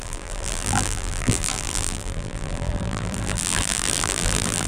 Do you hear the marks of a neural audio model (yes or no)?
yes